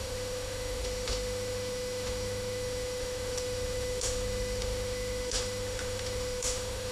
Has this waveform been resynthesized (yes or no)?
yes